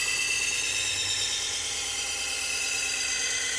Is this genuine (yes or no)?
yes